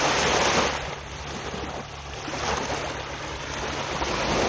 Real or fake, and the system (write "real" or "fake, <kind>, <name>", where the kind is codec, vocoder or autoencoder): real